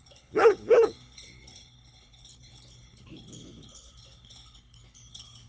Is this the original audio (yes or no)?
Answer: no